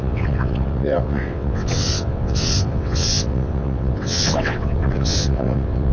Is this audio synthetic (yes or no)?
yes